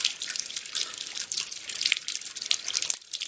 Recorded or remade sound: recorded